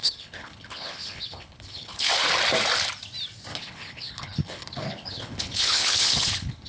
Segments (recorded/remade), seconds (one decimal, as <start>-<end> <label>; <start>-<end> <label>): 0.0-2.1 remade; 2.1-3.5 recorded; 3.5-6.7 remade